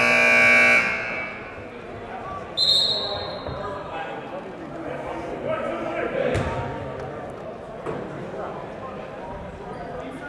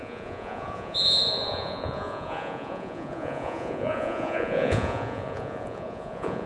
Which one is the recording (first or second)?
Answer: first